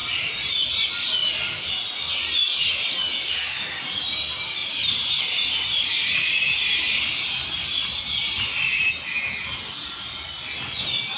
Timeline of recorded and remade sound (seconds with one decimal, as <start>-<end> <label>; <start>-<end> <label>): 0.0-0.5 remade; 0.5-4.6 recorded; 4.6-8.9 remade; 8.9-11.2 recorded